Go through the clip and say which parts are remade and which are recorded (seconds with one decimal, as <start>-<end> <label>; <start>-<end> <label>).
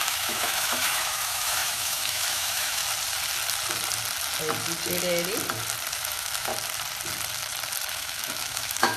0.0-2.8 remade; 2.8-5.9 recorded; 5.9-6.5 remade; 6.5-7.9 recorded; 7.9-9.0 remade